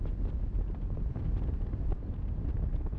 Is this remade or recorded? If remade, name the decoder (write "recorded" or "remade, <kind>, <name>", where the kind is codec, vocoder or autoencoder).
recorded